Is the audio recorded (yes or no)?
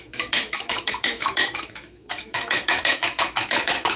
no